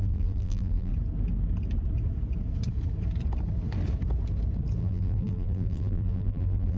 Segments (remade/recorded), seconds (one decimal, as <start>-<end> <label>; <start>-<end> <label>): 0.0-0.9 remade; 0.9-4.8 recorded; 4.8-6.8 remade